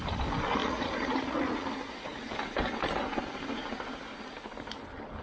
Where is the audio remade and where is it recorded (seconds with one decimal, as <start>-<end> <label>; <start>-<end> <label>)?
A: 0.0-0.6 recorded; 0.6-1.6 remade; 1.6-5.2 recorded